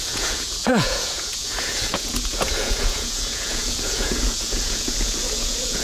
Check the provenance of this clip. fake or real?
fake